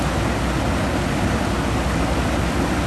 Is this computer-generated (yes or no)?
no